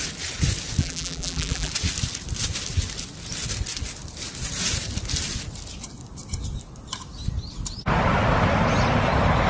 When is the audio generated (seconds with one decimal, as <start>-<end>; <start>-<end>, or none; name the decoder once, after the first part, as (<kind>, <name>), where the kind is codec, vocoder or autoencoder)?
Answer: 0.8-1.7 (vocoder, BigVGAN v2)